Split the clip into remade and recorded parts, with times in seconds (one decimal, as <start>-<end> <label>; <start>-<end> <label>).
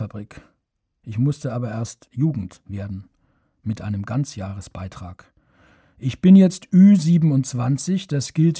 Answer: 0.0-1.5 recorded; 1.5-2.7 remade; 2.7-8.6 recorded